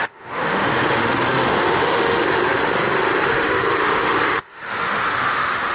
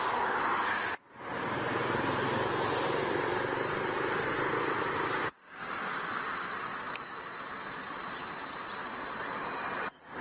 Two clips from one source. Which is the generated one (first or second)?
first